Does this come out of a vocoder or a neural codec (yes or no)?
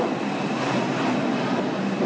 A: no